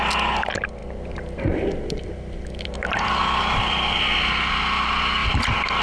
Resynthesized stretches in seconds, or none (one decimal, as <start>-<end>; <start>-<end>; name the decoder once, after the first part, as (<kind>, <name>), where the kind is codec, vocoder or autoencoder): 0.8-4.3 (vocoder, BigVGAN v2); 5.2-5.8